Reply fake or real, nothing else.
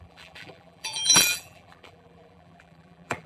fake